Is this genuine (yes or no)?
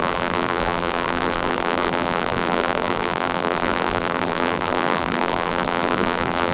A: no